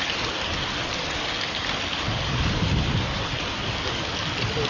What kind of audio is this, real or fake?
real